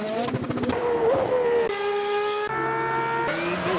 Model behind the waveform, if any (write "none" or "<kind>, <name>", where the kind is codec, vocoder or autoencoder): none